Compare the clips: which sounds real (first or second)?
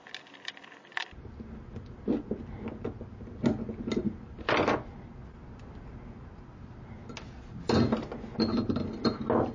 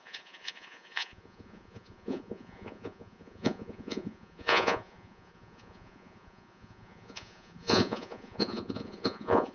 first